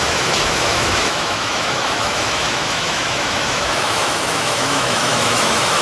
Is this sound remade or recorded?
remade